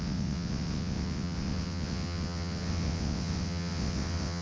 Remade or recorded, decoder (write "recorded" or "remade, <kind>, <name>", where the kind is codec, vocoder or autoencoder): remade, vocoder, WaveNeXt